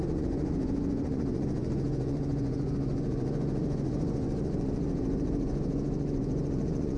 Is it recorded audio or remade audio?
remade